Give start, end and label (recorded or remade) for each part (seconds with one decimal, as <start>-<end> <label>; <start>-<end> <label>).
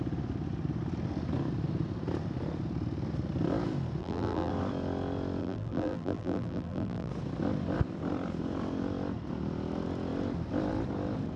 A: 0.0-4.0 recorded; 4.0-4.5 remade; 4.5-5.4 recorded; 5.4-7.1 remade; 7.1-11.4 recorded